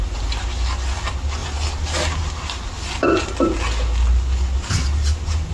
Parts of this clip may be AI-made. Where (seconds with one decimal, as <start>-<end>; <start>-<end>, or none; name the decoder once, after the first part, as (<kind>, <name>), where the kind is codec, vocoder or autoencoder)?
none

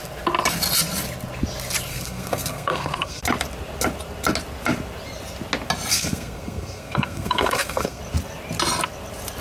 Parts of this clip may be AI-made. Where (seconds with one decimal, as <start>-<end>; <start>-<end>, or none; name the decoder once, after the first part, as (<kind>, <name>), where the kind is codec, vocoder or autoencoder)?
1.9-3.2 (codec, SNAC); 5.9-8.0

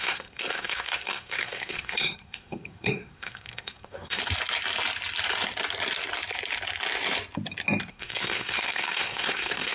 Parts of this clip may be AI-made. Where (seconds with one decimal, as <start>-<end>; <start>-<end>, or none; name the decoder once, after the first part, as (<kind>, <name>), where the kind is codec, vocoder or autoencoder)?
0.0-4.2 (codec, SNAC); 7.9-9.7

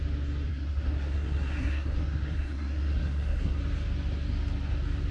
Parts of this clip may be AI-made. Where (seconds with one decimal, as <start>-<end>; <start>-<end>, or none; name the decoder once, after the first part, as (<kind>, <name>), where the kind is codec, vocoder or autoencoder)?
0.5-3.6 (codec, SNAC)